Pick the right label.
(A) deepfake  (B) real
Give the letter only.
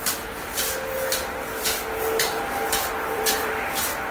A